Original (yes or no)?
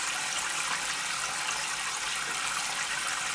no